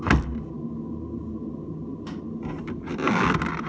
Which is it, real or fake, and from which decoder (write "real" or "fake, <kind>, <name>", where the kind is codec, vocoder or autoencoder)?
real